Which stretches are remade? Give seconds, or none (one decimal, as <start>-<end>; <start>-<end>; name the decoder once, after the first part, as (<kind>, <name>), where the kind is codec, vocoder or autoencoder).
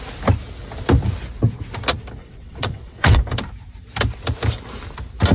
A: 2.2-3.2 (vocoder, WaveNeXt)